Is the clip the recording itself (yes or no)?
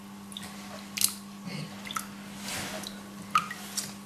yes